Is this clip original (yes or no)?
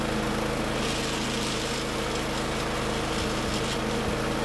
yes